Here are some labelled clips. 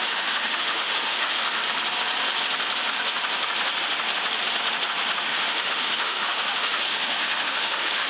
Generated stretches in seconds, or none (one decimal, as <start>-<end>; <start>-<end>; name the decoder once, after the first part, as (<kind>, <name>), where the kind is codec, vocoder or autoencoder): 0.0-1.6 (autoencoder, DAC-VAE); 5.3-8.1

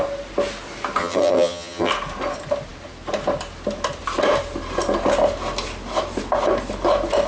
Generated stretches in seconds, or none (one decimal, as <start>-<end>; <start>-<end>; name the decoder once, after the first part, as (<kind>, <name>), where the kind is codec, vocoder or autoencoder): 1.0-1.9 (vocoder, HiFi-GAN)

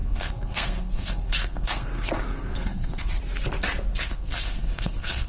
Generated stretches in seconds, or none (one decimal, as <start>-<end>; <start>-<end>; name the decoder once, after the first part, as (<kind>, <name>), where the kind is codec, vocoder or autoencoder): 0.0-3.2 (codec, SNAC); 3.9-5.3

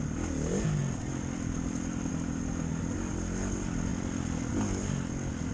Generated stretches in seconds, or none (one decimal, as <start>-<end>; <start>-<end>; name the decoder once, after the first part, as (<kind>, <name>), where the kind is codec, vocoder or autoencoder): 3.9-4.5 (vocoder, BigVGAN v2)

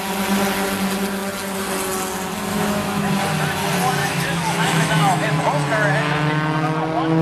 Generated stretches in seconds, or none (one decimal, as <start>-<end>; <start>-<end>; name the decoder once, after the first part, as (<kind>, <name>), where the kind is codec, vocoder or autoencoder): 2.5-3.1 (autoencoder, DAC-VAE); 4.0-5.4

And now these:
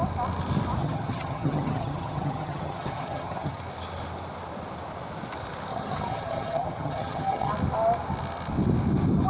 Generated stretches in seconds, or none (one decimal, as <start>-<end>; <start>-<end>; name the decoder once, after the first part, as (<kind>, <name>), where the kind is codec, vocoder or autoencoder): 0.8-3.6 (vocoder, HiFi-GAN); 5.7-7.5